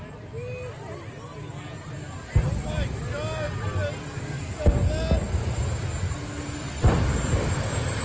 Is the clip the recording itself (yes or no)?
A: yes